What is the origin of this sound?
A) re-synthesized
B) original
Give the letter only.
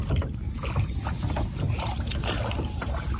B